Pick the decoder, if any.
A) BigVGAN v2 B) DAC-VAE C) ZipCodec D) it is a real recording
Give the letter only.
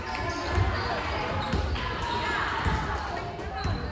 D